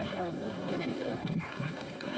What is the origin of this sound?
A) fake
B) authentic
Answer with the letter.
A